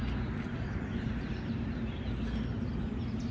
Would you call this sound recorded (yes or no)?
yes